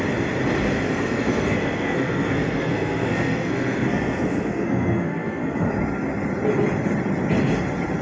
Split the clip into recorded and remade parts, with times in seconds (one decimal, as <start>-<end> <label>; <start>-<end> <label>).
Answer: 0.0-0.9 recorded; 0.9-5.7 remade; 5.7-8.0 recorded